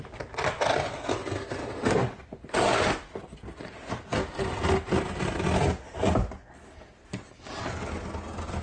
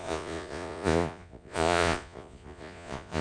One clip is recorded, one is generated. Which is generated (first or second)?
second